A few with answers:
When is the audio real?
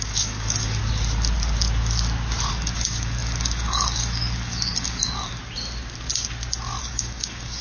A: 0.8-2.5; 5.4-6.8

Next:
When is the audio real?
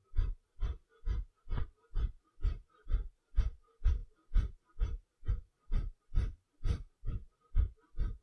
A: 0.7-1.6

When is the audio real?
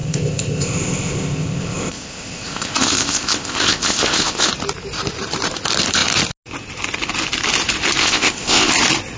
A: 4.5-8.0; 8.7-9.2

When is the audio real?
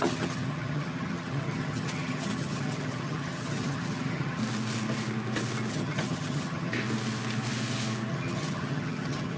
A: 4.4-5.7; 6.7-8.1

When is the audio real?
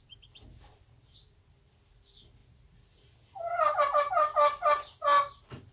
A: 0.0-5.7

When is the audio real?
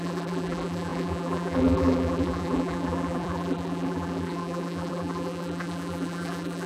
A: none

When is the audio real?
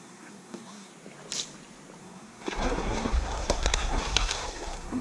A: 0.9-2.0